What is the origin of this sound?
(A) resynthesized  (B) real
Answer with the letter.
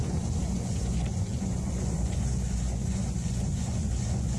A